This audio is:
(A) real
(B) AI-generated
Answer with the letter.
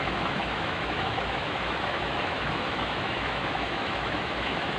B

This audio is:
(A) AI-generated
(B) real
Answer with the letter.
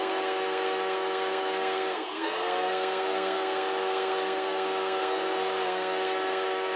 A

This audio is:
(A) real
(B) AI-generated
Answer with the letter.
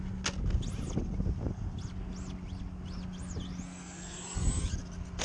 A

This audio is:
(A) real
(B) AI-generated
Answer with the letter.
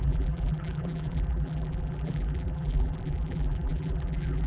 B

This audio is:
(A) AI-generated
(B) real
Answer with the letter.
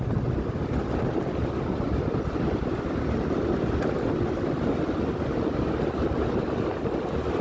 B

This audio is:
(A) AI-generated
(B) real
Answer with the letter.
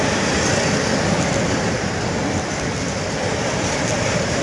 B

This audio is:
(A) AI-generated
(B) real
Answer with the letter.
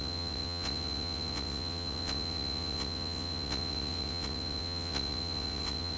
A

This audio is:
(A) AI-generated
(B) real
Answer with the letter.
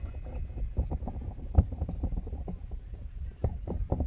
B